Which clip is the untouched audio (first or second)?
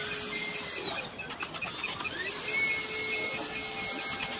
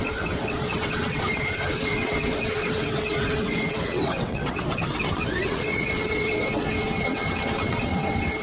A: first